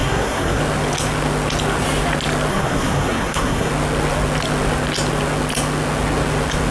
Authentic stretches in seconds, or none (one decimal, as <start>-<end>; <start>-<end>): 0.6-2.5; 3.7-6.7